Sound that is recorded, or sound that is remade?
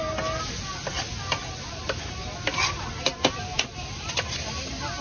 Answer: recorded